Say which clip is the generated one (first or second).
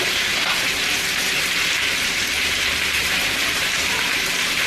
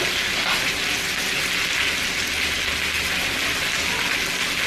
first